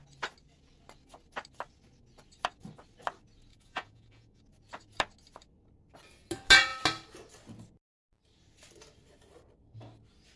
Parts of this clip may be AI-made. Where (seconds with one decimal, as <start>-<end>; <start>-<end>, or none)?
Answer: 3.5-4.4